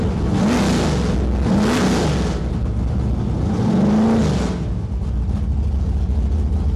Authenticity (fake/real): real